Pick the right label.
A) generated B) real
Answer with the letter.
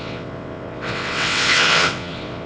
A